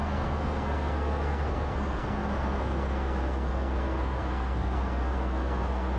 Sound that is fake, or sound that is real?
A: fake